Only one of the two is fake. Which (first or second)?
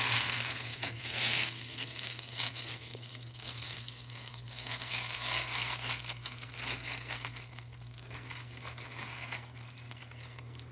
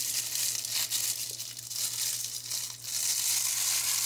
first